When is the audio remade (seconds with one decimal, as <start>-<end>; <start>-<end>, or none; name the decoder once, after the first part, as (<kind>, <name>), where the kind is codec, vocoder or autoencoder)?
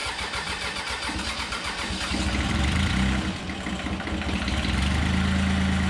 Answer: 0.0-0.8 (vocoder, BigVGAN v2); 1.6-5.0